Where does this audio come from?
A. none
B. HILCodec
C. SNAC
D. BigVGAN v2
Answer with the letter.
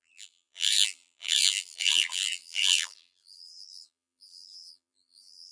D